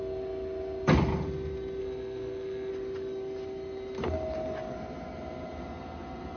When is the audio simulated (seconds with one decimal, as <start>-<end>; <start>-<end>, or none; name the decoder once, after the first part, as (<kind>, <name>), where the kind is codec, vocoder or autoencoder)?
1.8-2.7 (codec, SNAC)